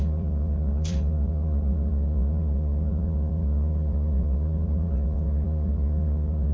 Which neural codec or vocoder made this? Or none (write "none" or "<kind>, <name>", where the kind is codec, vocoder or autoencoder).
vocoder, Vocos